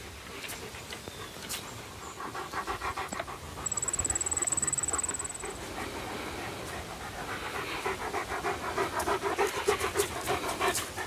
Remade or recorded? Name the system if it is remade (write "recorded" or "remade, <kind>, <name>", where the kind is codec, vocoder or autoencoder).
recorded